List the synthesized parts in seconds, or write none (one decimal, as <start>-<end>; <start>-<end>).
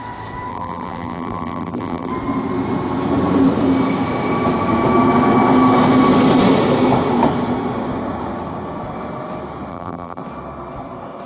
0.5-2.1; 9.7-10.2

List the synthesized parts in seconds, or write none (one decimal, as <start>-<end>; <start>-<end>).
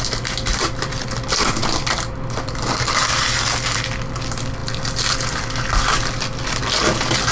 none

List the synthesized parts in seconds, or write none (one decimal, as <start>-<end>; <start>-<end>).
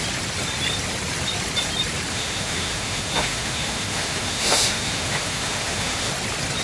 2.1-6.1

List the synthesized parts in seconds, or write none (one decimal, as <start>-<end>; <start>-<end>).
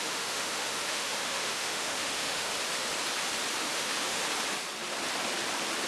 0.0-2.5; 3.6-4.2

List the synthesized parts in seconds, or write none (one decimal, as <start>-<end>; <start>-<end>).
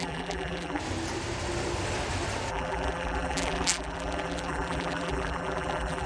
0.0-0.8; 2.5-6.1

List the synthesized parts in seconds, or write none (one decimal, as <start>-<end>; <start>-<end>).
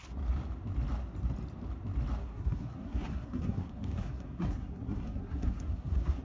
2.2-6.2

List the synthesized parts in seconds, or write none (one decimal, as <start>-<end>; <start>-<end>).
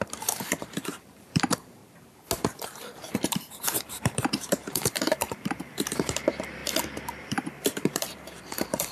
0.0-1.8; 2.6-6.6; 7.2-8.9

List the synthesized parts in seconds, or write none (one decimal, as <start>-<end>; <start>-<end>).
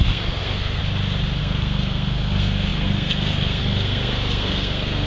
0.0-0.8; 1.4-5.1